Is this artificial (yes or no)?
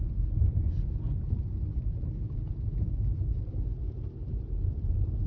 yes